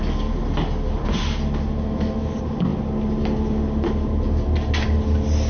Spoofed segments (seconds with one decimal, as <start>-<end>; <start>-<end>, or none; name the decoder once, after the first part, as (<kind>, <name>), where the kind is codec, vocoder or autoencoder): none